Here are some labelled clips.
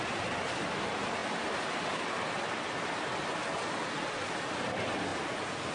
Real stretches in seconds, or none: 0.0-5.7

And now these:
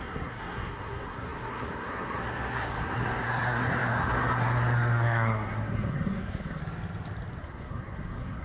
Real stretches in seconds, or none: 6.6-7.4

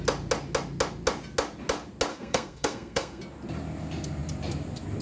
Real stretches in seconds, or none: 0.0-2.1; 3.2-5.0

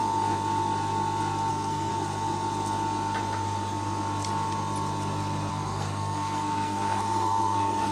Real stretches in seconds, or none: 0.0-1.5; 1.9-5.5

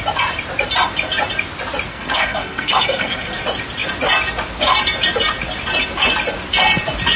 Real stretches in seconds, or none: 0.0-1.9; 3.4-7.2

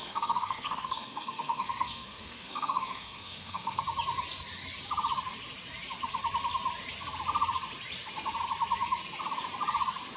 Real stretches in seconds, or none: 3.8-10.2